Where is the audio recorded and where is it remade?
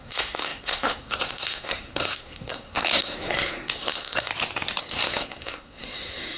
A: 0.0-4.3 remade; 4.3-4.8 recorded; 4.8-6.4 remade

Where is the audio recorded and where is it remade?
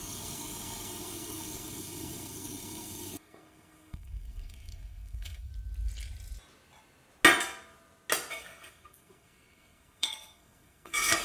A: 0.0-5.5 remade; 5.5-8.3 recorded; 8.3-11.2 remade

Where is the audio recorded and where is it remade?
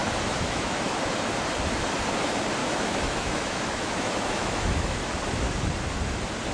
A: 0.0-1.0 remade; 1.0-2.6 recorded; 2.6-5.0 remade; 5.0-6.5 recorded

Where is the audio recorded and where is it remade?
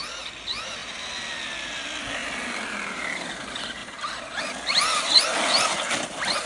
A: 0.0-0.8 recorded; 0.8-1.4 remade; 1.4-2.2 recorded; 2.2-3.3 remade; 3.3-3.8 recorded; 3.8-4.4 remade; 4.4-6.5 recorded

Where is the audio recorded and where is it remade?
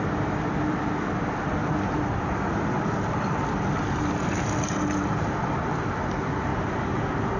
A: 0.0-7.4 remade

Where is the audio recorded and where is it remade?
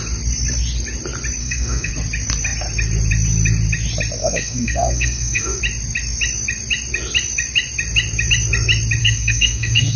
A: 0.0-1.4 recorded; 1.4-1.9 remade; 1.9-4.2 recorded; 4.2-5.6 remade; 5.6-9.0 recorded; 9.0-10.0 remade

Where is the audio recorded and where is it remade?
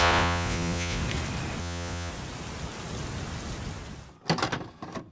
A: 0.0-1.0 remade; 1.0-1.6 recorded; 1.6-2.1 remade; 2.1-5.1 recorded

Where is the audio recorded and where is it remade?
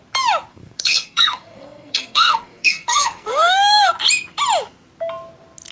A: 0.0-0.5 recorded; 0.5-3.9 remade; 3.9-5.7 recorded